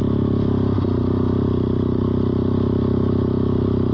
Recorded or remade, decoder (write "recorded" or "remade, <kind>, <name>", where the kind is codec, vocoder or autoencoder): recorded